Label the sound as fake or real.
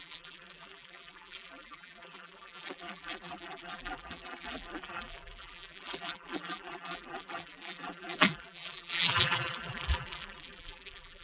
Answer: fake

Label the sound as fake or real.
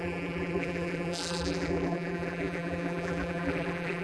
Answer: fake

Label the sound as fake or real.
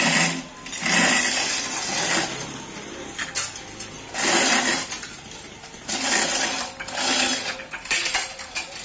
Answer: real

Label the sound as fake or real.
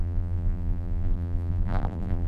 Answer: fake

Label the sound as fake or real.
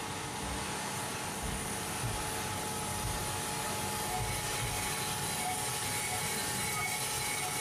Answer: real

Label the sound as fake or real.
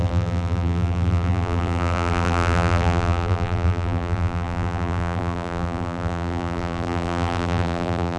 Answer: fake